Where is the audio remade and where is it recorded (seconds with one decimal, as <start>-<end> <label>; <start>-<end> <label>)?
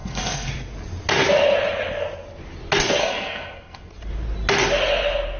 0.0-0.5 remade; 0.5-3.0 recorded; 3.0-3.9 remade; 3.9-5.4 recorded